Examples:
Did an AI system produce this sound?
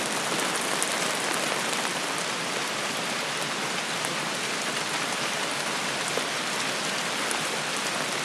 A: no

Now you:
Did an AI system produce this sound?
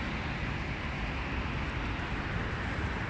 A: no